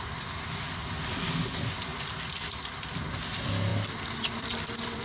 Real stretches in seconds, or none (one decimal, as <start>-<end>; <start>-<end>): 0.0-5.0